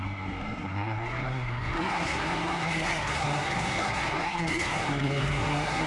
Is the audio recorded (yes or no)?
no